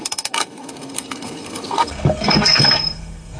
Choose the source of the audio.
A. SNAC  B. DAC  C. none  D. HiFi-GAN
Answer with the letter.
A